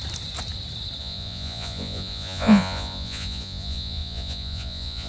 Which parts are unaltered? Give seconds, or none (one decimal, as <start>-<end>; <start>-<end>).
0.0-1.0